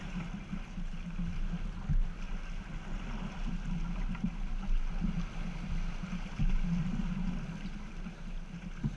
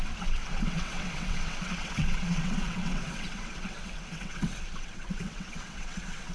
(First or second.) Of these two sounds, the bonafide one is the first